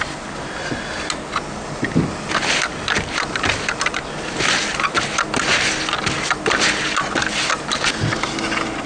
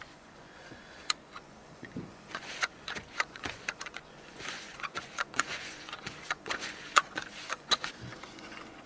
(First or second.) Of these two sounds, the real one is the first